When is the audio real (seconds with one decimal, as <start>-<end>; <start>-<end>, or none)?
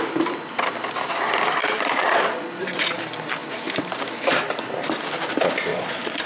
0.0-1.6; 3.0-5.7